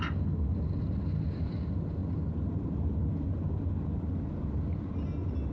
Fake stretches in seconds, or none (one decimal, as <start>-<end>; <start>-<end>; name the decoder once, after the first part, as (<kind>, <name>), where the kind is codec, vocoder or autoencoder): none